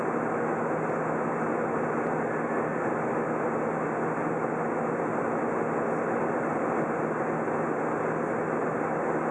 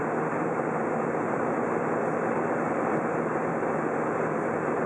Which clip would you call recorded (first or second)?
first